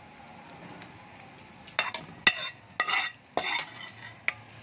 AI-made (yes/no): no